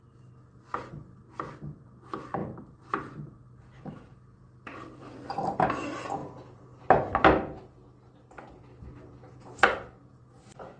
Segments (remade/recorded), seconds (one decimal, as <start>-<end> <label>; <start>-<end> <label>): 0.0-2.4 recorded; 2.4-5.3 remade; 5.3-10.8 recorded